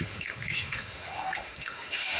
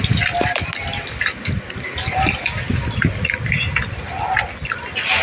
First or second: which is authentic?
second